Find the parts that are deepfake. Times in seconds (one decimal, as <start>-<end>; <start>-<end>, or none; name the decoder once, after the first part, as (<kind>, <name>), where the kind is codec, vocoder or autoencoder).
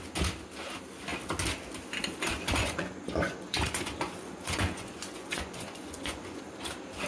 2.3-6.4 (vocoder, Vocos)